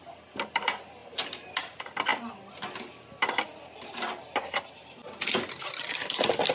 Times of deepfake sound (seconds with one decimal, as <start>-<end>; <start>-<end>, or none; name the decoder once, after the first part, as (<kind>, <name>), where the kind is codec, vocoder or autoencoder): none